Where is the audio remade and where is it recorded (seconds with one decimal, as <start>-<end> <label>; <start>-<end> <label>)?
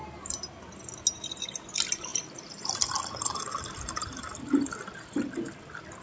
0.0-2.1 recorded; 2.1-4.5 remade; 4.5-6.0 recorded